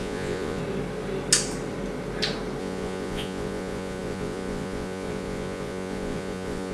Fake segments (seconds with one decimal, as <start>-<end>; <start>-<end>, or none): 0.0-0.6; 2.6-6.7